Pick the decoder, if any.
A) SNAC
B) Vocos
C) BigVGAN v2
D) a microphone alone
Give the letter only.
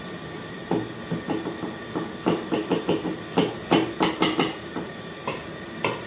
C